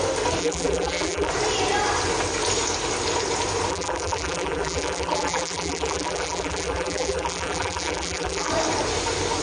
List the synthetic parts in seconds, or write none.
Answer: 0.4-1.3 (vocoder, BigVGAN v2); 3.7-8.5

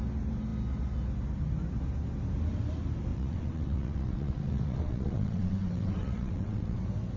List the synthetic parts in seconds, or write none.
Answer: 3.1-6.8 (vocoder, WaveNeXt)

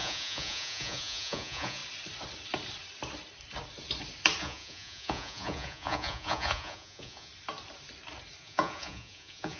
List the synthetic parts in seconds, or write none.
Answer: 0.0-1.8 (vocoder, Vocos); 4.4-7.3; 8.4-9.6